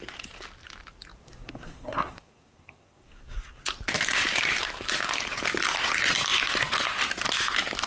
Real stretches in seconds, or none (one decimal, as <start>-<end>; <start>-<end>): 0.0-1.2; 3.6-7.9